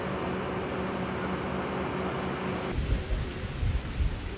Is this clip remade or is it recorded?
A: recorded